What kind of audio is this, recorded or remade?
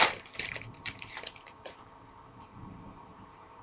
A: remade